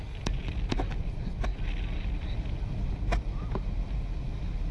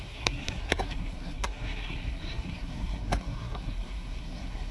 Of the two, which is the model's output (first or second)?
second